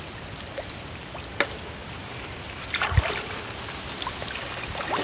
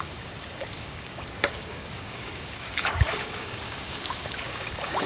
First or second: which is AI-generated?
second